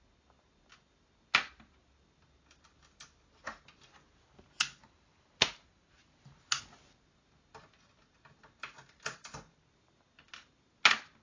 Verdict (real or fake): real